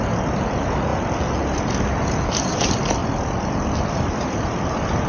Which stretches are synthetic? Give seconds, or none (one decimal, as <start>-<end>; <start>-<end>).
3.0-4.0